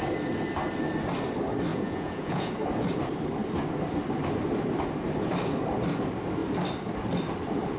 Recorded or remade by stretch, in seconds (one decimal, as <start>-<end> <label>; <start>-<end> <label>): 0.0-1.7 recorded; 1.7-2.5 remade; 2.5-7.8 recorded